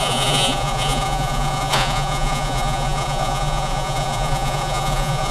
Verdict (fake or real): fake